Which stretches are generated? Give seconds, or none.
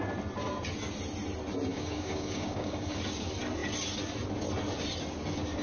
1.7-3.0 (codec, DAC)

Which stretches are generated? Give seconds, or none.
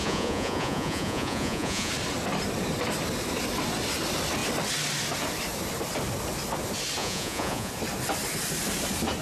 0.0-1.9 (vocoder, Vocos); 7.0-7.7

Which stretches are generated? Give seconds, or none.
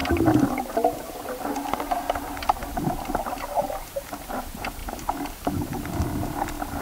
none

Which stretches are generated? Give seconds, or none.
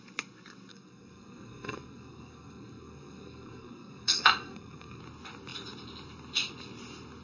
0.7-5.0 (codec, SNAC)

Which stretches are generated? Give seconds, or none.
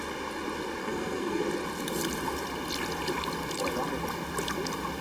0.8-1.4 (codec, SNAC)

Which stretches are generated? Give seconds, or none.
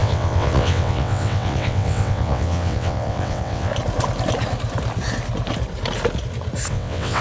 0.0-3.7 (vocoder, WaveNeXt); 6.7-7.2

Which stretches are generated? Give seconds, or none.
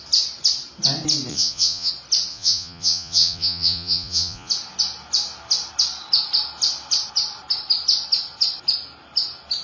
1.3-1.9 (vocoder, Vocos); 2.3-4.5